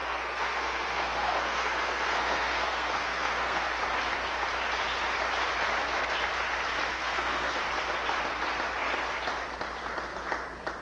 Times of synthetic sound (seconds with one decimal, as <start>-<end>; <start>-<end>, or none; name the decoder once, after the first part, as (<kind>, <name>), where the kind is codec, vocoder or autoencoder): 0.0-3.8 (codec, SNAC); 6.9-7.6